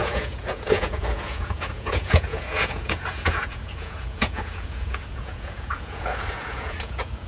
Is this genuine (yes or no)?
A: no